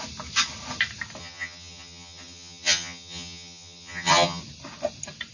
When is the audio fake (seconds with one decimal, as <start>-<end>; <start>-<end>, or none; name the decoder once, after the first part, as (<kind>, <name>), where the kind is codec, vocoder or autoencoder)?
1.2-4.4 (vocoder, HiFi-GAN)